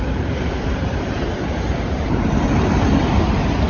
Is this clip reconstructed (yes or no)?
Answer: yes